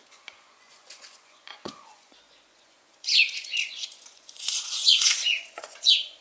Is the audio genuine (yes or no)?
no